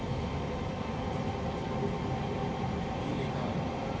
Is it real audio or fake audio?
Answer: fake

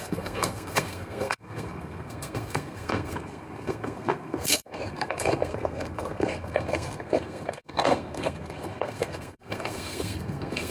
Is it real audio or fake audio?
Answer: fake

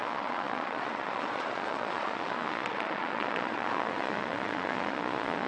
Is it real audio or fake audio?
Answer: fake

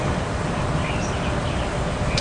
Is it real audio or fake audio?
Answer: real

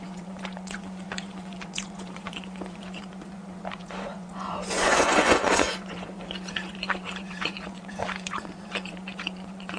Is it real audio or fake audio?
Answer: fake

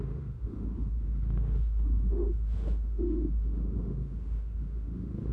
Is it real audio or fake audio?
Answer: fake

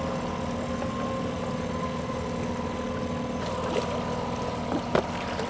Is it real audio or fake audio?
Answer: real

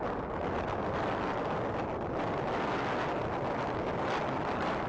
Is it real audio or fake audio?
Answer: real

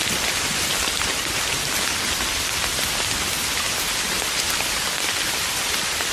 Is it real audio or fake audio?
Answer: fake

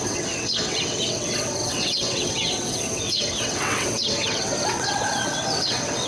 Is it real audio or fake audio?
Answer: fake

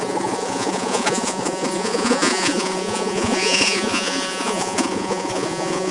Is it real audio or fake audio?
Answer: fake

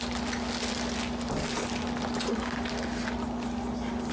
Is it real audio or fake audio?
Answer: real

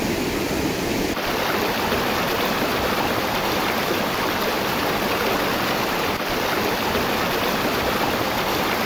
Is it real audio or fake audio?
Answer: real